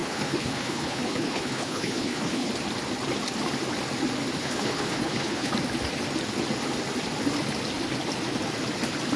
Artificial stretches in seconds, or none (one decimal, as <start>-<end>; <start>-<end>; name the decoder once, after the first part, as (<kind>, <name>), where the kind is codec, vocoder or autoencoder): 0.0-2.5 (codec, HILCodec); 4.4-5.5